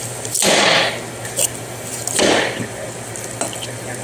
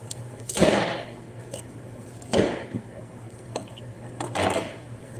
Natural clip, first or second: first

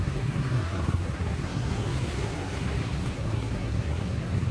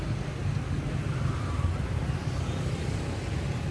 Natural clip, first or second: second